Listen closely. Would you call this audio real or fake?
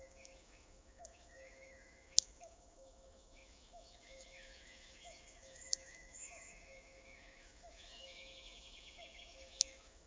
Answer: fake